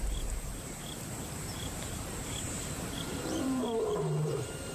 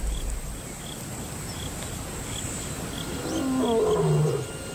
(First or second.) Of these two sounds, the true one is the second